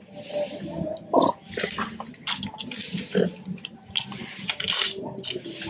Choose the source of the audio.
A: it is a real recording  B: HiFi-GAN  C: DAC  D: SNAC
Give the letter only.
A